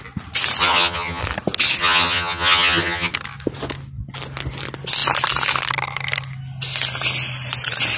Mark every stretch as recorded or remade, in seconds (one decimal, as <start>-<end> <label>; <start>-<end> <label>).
0.0-0.6 recorded; 0.6-1.2 remade; 1.2-1.8 recorded; 1.8-3.1 remade; 3.1-8.0 recorded